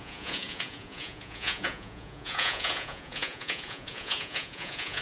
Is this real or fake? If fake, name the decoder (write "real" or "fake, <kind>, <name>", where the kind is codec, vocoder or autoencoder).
fake, vocoder, Vocos